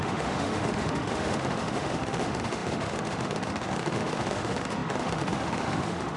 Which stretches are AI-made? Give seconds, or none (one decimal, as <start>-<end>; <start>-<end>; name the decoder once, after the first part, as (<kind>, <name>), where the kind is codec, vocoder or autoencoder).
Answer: 0.0-6.2 (autoencoder, DAC-VAE)